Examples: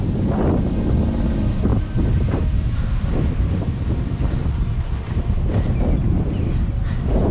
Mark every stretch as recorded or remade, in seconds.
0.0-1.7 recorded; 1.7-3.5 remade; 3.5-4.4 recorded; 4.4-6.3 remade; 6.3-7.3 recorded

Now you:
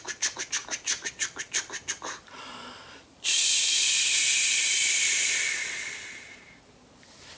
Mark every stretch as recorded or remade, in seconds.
0.0-0.6 remade; 0.6-1.9 recorded; 1.9-4.3 remade; 4.3-7.4 recorded

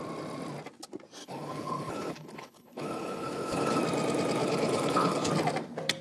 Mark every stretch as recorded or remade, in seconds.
0.0-1.2 recorded; 1.2-3.8 remade; 3.8-4.4 recorded; 4.4-5.3 remade; 5.3-6.0 recorded

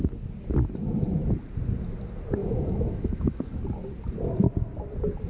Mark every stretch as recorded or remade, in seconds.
0.0-2.4 recorded; 2.4-3.6 remade; 3.6-5.3 recorded

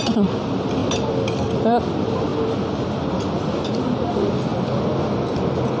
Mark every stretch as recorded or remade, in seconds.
0.0-5.8 recorded

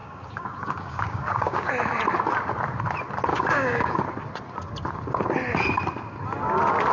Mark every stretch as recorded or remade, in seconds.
0.0-1.7 remade; 1.7-3.3 recorded; 3.3-4.0 remade; 4.0-6.9 recorded